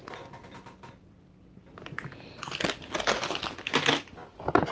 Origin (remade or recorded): recorded